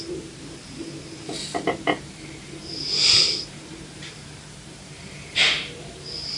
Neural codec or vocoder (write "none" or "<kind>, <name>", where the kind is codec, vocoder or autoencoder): vocoder, BigVGAN v2